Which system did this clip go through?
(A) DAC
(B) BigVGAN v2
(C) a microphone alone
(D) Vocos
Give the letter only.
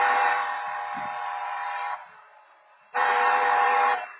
B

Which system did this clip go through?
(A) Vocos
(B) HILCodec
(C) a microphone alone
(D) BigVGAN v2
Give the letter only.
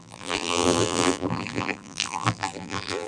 D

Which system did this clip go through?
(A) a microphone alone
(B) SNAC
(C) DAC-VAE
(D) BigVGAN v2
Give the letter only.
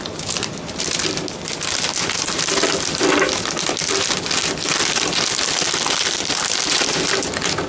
A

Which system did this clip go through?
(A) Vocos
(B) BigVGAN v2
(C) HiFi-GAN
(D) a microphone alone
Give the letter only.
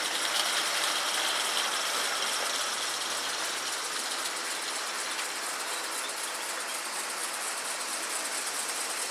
D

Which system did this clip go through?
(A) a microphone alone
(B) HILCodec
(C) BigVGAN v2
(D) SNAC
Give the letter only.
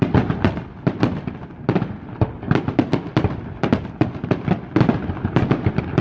A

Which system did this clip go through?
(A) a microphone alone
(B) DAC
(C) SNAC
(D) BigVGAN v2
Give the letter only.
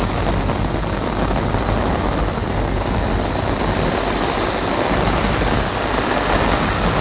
A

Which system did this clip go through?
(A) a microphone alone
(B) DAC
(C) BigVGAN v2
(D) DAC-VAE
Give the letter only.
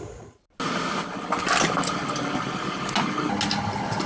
A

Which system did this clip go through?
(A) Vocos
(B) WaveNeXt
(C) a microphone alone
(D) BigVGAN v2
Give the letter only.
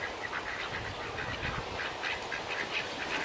C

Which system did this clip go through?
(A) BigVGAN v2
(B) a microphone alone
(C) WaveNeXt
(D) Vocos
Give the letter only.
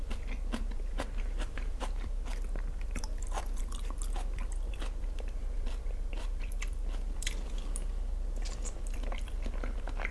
A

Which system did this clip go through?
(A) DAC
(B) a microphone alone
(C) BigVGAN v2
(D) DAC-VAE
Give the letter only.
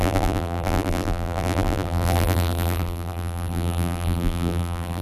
C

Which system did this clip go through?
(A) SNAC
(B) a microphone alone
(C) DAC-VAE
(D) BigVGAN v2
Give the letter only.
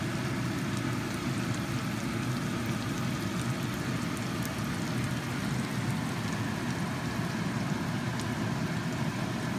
B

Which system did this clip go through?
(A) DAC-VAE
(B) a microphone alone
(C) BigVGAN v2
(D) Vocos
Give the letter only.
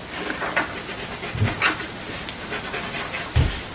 B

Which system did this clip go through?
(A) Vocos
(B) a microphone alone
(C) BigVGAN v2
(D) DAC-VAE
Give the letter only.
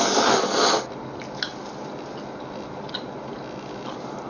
B